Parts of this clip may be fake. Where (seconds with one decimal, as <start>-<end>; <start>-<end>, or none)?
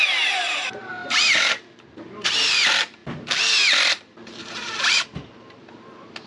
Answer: 0.0-3.0; 4.0-6.3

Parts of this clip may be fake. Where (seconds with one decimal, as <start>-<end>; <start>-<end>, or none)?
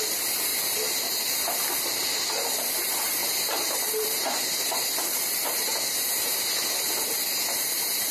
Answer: 0.5-1.4; 3.2-6.9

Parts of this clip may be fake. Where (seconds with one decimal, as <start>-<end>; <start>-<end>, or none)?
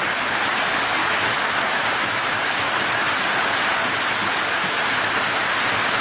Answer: 1.0-2.7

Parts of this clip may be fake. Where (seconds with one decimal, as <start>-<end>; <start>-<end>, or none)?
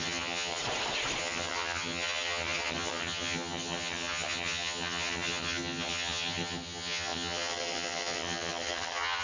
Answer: 0.0-0.6; 1.2-9.2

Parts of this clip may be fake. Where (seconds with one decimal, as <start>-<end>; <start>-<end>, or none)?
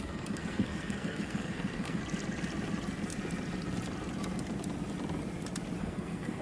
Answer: 0.0-2.0; 5.8-6.4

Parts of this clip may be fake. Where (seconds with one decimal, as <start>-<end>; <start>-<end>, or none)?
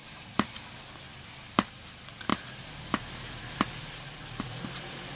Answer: 0.0-0.5; 2.3-5.2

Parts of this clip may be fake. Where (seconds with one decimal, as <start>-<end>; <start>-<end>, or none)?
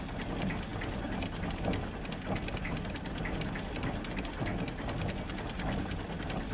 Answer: none